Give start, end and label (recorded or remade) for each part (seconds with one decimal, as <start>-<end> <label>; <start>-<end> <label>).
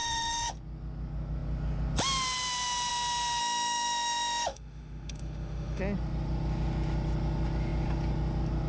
0.0-0.5 remade; 0.5-3.4 recorded; 3.4-5.8 remade; 5.8-8.7 recorded